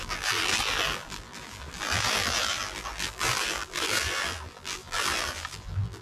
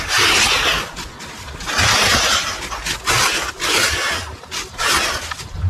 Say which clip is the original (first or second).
second